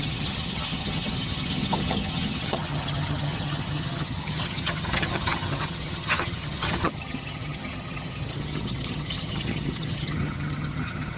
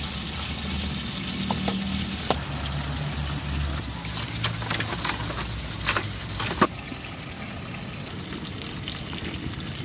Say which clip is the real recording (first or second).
second